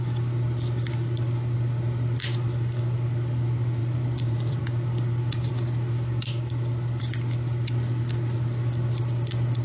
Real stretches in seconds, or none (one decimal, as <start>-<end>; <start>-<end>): 0.0-3.8; 4.6-9.6